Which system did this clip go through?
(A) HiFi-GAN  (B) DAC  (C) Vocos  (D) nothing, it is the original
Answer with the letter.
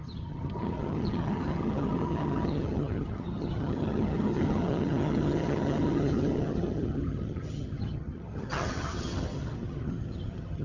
A